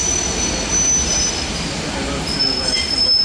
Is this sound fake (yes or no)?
no